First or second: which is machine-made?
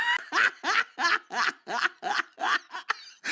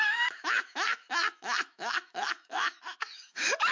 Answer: second